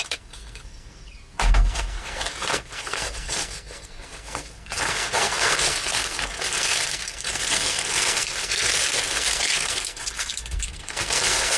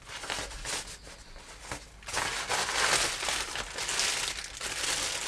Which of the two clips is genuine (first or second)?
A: second